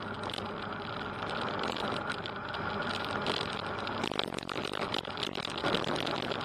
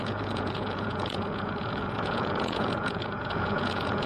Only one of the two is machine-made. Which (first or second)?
second